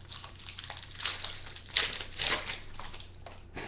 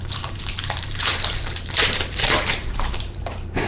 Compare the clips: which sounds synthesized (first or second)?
second